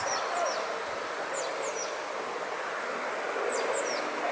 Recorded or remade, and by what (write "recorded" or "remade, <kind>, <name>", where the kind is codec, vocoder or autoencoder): recorded